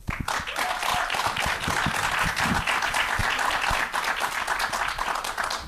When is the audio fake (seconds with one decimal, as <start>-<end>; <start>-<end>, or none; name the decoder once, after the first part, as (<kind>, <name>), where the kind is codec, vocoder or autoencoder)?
none